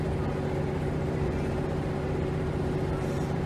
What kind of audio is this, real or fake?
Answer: real